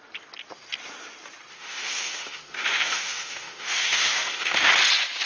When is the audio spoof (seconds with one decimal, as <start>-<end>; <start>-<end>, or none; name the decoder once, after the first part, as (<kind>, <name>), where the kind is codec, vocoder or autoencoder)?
1.5-4.7 (autoencoder, DAC-VAE)